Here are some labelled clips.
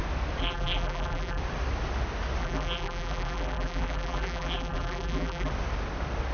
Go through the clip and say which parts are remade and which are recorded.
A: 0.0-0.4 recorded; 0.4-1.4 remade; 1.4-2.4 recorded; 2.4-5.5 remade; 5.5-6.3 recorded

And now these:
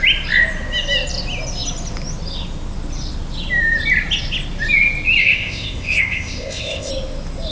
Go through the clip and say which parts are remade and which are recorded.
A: 0.0-5.2 recorded; 5.2-6.9 remade; 6.9-7.5 recorded

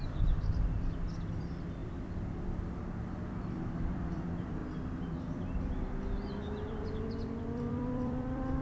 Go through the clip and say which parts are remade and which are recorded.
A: 0.0-4.6 remade; 4.6-7.1 recorded; 7.1-8.6 remade

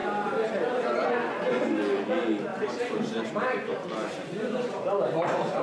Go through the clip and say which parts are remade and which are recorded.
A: 0.0-2.5 recorded; 2.5-5.6 remade

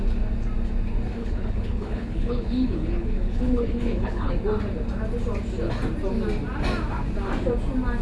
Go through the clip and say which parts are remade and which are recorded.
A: 0.0-1.2 recorded; 1.2-4.3 remade; 4.3-8.0 recorded

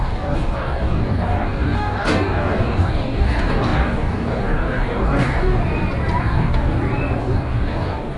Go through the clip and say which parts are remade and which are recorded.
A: 0.0-5.6 remade; 5.6-6.2 recorded; 6.2-6.7 remade; 6.7-7.2 recorded; 7.2-8.2 remade

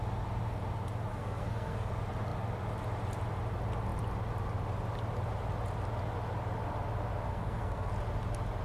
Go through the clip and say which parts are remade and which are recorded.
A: 0.0-1.1 recorded; 1.1-1.9 remade; 1.9-7.3 recorded; 7.3-7.9 remade; 7.9-8.6 recorded